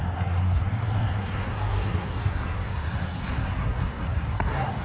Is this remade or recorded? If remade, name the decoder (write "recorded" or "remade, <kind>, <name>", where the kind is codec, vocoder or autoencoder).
remade, codec, SNAC